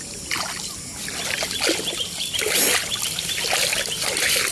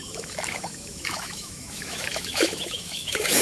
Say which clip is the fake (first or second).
second